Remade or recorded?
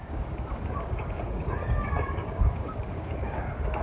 remade